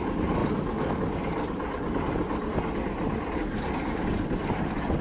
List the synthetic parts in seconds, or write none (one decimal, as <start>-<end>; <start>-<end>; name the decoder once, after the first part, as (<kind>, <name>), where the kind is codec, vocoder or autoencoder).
none